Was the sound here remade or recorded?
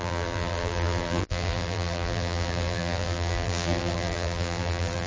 remade